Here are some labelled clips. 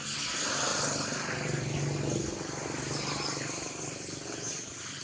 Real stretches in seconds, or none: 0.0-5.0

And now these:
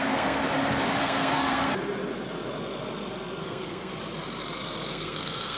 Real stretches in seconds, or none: 0.4-1.0; 1.7-3.4; 3.9-4.9